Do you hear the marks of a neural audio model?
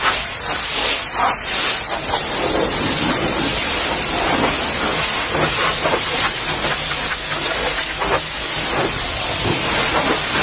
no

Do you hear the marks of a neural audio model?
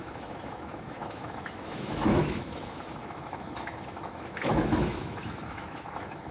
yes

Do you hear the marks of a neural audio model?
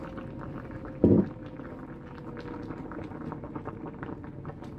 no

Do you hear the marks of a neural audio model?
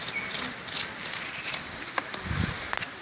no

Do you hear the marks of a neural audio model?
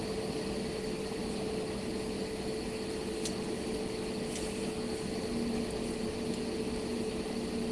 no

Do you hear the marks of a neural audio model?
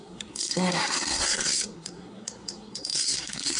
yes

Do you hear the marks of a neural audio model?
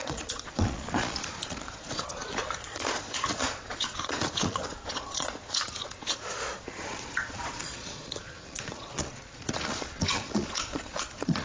yes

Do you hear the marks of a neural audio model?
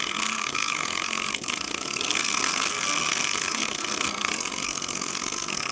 yes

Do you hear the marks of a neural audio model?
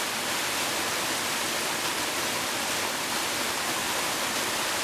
no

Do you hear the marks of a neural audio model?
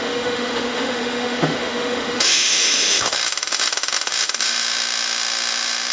yes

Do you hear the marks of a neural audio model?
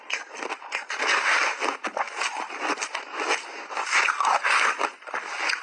no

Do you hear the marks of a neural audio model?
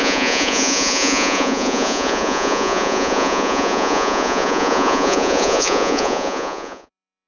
yes